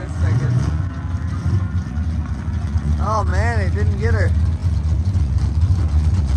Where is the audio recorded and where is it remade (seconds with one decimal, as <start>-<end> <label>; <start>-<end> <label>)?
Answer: 0.0-3.3 remade; 3.3-4.0 recorded; 4.0-6.4 remade